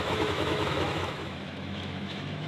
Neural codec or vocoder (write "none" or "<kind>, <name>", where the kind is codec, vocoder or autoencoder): autoencoder, DAC-VAE